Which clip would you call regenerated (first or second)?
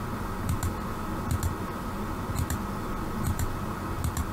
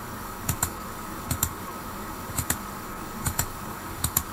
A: second